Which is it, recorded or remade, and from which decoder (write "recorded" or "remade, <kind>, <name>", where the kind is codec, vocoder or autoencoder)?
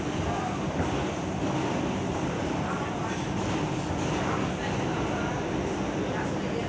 recorded